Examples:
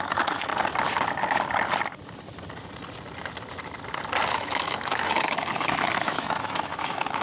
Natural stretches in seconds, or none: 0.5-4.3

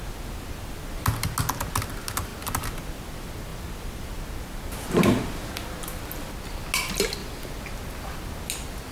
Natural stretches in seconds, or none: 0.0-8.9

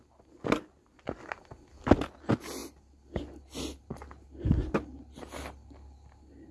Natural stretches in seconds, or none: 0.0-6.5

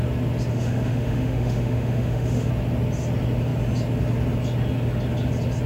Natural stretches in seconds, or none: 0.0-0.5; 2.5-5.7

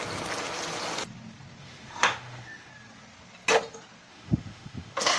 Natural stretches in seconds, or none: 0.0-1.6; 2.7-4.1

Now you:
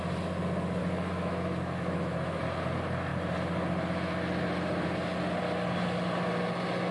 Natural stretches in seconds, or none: 0.0-0.8; 2.4-6.9